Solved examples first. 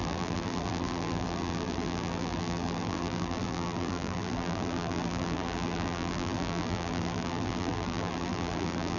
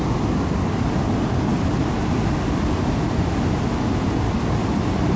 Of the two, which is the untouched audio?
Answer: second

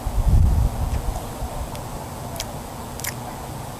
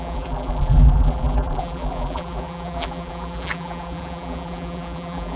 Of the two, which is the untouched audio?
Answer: first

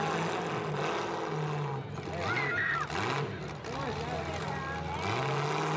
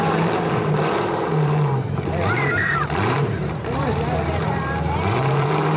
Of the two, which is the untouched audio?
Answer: first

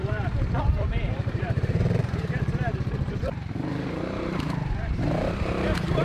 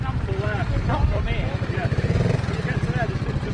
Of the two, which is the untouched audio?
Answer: second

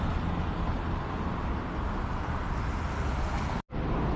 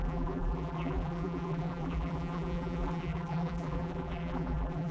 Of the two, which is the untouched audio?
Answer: first